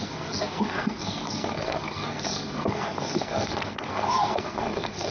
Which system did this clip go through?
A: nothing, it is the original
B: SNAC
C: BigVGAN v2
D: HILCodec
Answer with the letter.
B